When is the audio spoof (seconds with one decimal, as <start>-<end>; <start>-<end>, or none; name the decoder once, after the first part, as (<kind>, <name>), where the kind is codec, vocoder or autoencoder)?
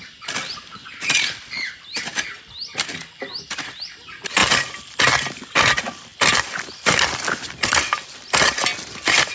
none